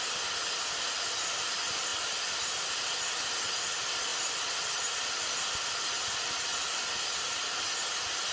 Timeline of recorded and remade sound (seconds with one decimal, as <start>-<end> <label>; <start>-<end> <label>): 0.0-8.3 recorded